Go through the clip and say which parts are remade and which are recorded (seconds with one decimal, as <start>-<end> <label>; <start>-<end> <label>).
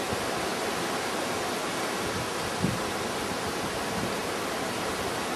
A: 0.0-5.4 recorded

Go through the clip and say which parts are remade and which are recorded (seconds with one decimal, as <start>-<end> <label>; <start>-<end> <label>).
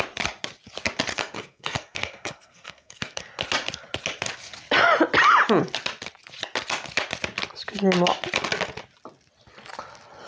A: 0.0-1.1 recorded; 1.1-3.2 remade; 3.2-10.3 recorded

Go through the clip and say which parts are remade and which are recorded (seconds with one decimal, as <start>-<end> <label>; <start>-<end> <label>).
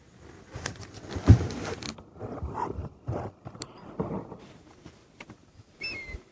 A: 0.0-2.8 recorded; 2.8-6.3 remade